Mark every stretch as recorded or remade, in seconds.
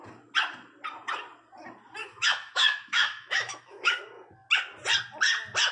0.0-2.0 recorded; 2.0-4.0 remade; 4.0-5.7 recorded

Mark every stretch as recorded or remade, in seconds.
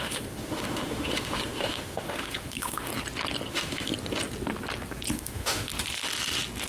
0.0-2.9 remade; 2.9-3.5 recorded; 3.5-3.9 remade; 3.9-5.1 recorded; 5.1-5.7 remade; 5.7-6.7 recorded